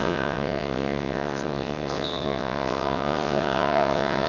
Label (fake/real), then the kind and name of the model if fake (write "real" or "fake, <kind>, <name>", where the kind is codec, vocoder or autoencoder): fake, vocoder, WaveNeXt